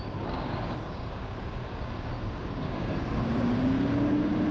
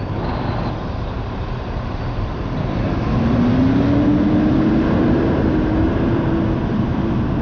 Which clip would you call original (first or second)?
second